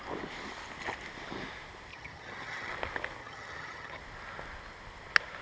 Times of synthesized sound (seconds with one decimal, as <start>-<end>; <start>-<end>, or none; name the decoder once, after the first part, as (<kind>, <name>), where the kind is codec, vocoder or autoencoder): 1.9-2.7 (vocoder, HiFi-GAN); 3.2-4.0